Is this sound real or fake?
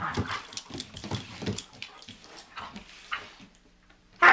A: fake